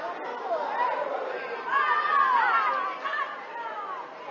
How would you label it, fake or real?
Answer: real